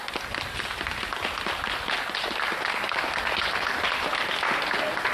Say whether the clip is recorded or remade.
recorded